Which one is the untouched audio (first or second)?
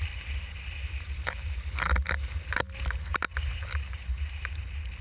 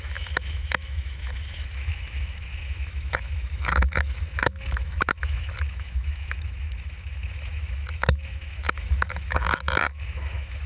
first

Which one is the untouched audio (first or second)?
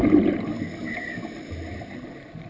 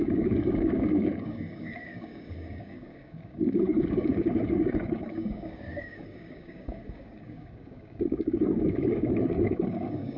first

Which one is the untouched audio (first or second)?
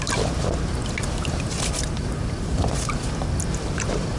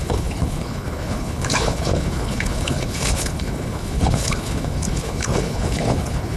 first